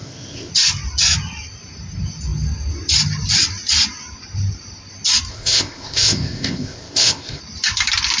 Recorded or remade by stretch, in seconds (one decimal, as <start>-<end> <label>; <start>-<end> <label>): 0.0-0.5 remade; 0.5-5.3 recorded; 5.3-7.4 remade; 7.4-8.2 recorded